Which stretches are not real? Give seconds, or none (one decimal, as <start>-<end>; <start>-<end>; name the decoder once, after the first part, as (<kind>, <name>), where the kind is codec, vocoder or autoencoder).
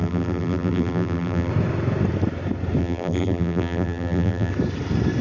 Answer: 0.0-1.5 (vocoder, BigVGAN v2); 2.8-4.5